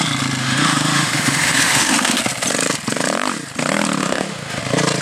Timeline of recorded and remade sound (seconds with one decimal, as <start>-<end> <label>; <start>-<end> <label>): 0.0-0.4 recorded; 0.4-2.2 remade; 2.2-4.0 recorded; 4.0-4.6 remade; 4.6-5.0 recorded